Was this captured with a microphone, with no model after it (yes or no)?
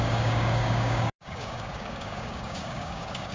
no